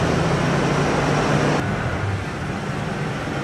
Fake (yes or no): no